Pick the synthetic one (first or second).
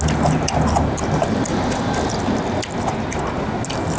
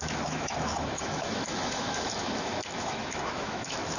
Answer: second